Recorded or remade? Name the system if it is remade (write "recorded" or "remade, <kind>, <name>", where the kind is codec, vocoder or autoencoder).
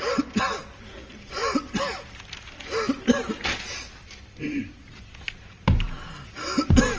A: recorded